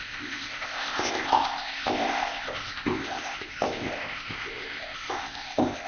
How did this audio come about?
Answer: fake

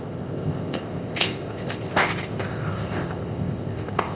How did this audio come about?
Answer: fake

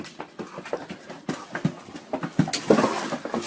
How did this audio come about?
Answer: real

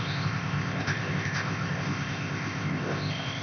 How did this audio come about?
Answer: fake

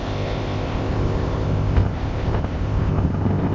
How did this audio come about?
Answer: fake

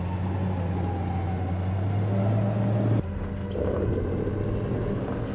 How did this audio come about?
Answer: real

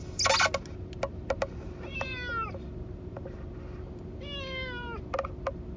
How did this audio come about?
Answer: real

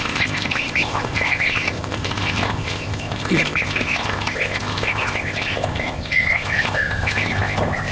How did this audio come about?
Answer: fake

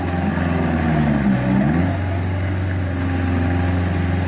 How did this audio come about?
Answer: real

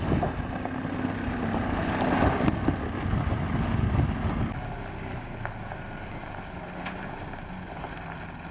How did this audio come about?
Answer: real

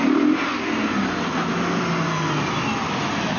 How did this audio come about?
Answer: real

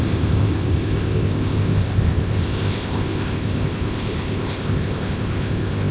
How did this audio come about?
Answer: fake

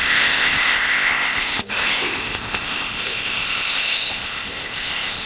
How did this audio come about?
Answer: fake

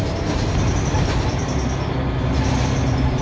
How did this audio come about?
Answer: real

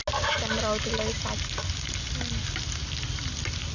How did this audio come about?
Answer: real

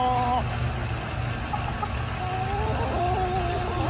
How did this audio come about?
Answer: real